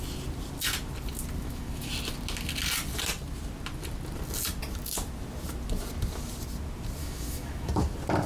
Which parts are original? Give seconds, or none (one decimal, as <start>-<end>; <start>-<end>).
0.0-1.4; 1.9-7.0; 7.7-8.3